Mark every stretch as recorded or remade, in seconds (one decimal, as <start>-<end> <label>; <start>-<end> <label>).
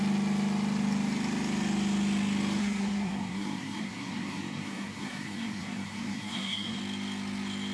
0.0-2.6 recorded; 2.6-6.8 remade; 6.8-7.7 recorded